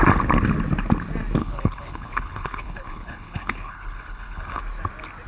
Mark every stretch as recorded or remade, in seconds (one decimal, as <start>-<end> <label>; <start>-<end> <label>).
0.0-1.4 recorded; 1.4-4.6 remade; 4.6-5.3 recorded